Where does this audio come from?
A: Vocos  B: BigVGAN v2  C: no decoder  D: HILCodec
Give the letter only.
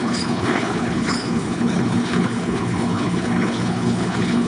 D